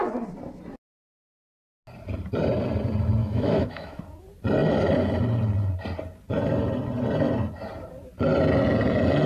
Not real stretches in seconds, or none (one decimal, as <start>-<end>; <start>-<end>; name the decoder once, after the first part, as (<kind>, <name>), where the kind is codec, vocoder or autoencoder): 3.2-4.0 (autoencoder, DAC-VAE)